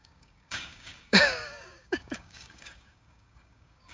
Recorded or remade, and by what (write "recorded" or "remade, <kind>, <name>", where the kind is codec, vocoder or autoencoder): remade, codec, DAC